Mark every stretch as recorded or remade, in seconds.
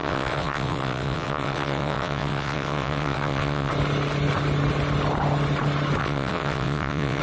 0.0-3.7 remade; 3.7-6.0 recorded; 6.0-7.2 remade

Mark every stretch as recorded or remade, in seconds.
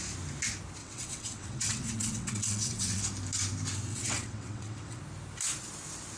0.0-0.8 recorded; 0.8-3.0 remade; 3.0-3.9 recorded; 3.9-5.0 remade; 5.0-6.2 recorded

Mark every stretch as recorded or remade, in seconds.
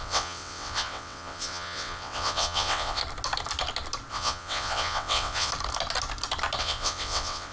0.0-3.0 remade; 3.0-4.1 recorded; 4.1-5.5 remade; 5.5-6.6 recorded; 6.6-7.5 remade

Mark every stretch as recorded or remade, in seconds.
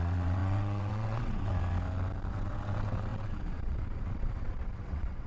0.0-1.5 remade; 1.5-2.3 recorded; 2.3-5.3 remade